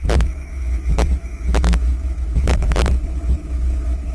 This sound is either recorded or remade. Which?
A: remade